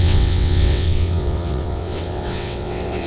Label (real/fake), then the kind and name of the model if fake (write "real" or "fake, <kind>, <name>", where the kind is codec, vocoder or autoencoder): fake, vocoder, WaveNeXt